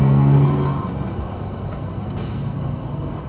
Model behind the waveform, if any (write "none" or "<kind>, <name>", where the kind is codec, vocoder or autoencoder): codec, SNAC